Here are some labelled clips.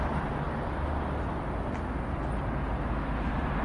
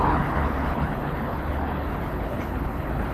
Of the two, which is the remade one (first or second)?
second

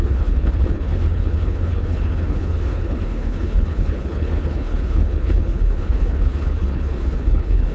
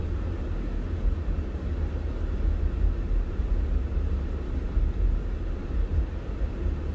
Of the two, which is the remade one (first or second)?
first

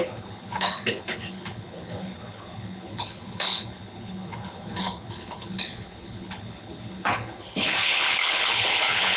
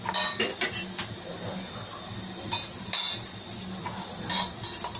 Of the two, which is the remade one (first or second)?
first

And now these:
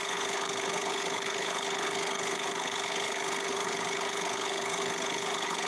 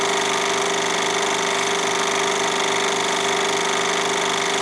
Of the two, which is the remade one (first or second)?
first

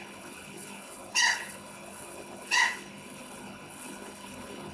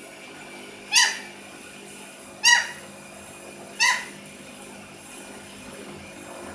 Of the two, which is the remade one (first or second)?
first